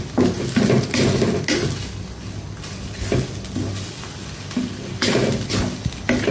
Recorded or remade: recorded